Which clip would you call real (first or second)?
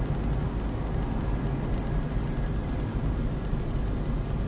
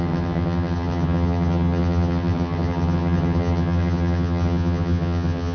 first